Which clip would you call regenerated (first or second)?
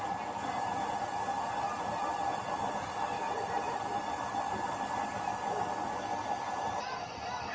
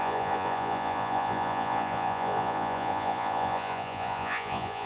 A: second